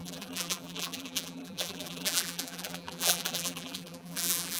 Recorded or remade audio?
remade